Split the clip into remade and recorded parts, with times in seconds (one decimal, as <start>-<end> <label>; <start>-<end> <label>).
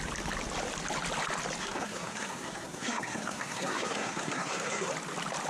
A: 0.0-1.6 recorded; 1.6-4.9 remade; 4.9-5.5 recorded